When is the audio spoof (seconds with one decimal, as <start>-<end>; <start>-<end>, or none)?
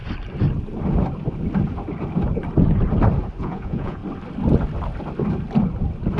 3.4-4.0